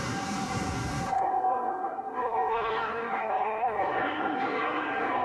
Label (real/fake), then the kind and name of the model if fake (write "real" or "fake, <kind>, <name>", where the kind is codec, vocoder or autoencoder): fake, codec, SNAC